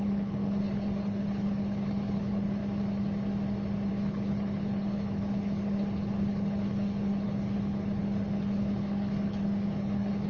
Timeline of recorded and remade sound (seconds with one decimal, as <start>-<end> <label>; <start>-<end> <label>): 0.0-2.6 remade; 2.6-3.9 recorded; 3.9-10.3 remade